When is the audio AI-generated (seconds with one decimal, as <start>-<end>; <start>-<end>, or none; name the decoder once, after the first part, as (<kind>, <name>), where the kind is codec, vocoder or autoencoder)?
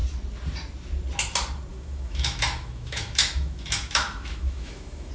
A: 1.7-5.1 (autoencoder, DAC-VAE)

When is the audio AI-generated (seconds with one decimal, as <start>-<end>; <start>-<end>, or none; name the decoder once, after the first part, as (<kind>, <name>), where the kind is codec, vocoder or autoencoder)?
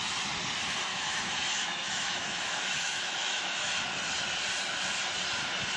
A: 0.9-3.7 (autoencoder, DAC-VAE)